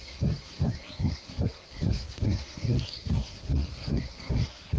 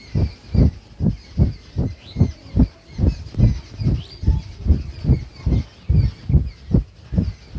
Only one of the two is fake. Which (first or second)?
first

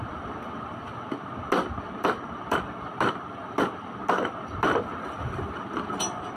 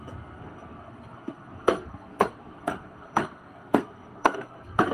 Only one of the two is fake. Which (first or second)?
second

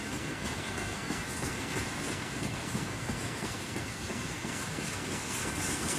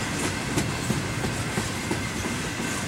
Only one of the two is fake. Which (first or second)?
first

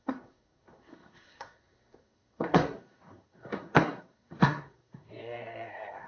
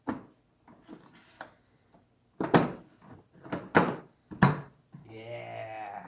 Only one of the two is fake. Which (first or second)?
first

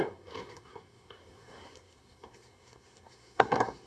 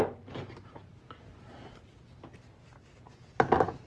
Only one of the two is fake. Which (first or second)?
first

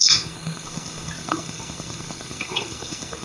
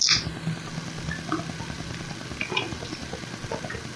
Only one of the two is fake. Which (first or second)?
first